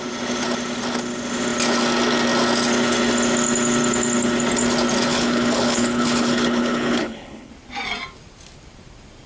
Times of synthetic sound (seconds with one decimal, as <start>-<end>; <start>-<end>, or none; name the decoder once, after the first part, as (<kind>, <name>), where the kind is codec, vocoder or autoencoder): 5.1-7.5 (codec, HILCodec)